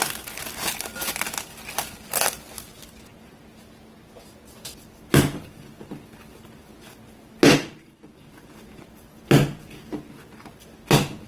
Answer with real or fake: real